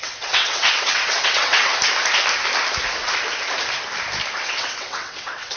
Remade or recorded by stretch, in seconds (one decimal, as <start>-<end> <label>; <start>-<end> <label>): 0.0-1.7 remade; 1.7-4.4 recorded; 4.4-5.6 remade